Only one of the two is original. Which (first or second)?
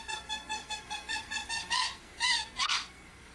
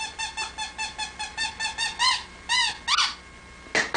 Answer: second